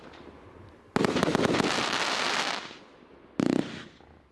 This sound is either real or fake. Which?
real